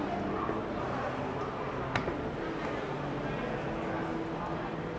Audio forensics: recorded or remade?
recorded